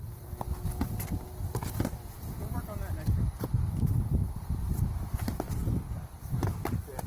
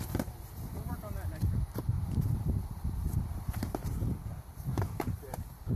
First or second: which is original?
first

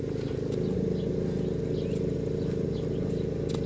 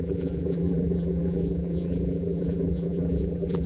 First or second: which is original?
first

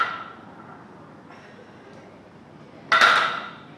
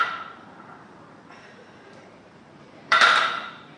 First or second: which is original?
first